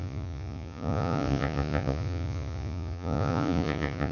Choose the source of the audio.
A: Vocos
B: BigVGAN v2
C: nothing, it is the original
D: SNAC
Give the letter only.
A